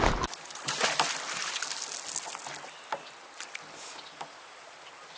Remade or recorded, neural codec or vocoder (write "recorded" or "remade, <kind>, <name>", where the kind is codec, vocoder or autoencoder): recorded